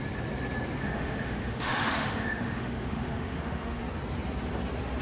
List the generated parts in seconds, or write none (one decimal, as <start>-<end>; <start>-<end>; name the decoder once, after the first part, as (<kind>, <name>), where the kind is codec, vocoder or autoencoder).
0.8-3.8 (autoencoder, DAC-VAE)